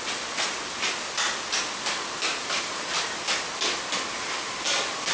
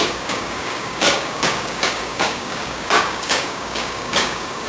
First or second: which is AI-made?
second